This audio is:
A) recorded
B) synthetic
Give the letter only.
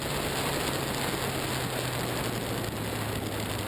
A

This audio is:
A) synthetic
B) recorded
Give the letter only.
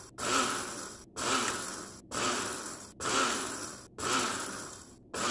B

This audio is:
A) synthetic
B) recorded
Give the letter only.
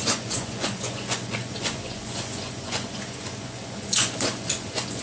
A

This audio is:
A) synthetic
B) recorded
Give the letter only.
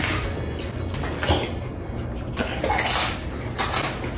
B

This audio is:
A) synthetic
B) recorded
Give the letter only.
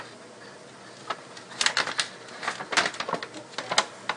B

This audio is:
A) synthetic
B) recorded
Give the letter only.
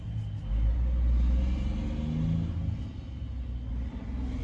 B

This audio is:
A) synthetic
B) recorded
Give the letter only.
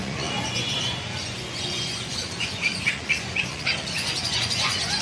A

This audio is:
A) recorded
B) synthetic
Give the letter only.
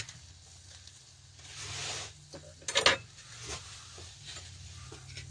A